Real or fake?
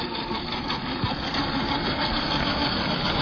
fake